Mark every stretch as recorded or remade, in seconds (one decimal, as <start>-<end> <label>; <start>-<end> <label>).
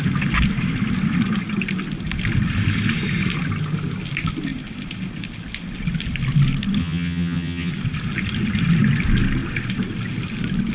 0.0-6.8 recorded; 6.8-7.7 remade; 7.7-10.7 recorded